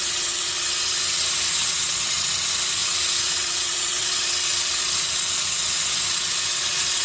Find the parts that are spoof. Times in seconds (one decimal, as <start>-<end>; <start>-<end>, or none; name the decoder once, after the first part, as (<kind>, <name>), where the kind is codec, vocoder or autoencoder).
0.0-7.0 (vocoder, WaveNeXt)

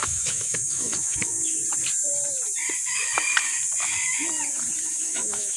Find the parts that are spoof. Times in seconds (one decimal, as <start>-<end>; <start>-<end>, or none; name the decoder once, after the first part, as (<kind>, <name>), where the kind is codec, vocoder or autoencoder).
0.0-1.6 (autoencoder, DAC-VAE); 5.0-5.6

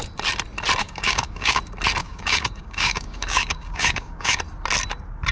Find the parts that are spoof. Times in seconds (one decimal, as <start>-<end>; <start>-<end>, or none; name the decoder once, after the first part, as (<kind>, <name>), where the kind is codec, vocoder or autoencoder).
0.8-1.6 (codec, DAC); 2.0-4.4

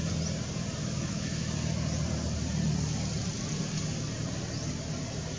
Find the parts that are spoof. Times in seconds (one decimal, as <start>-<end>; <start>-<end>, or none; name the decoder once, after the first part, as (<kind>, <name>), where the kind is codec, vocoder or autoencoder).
0.8-1.4 (autoencoder, DAC-VAE)

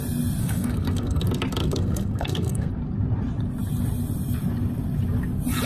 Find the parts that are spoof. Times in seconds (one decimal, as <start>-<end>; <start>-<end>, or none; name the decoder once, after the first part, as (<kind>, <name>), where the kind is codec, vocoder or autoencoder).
0.4-1.2 (codec, SNAC); 1.6-2.7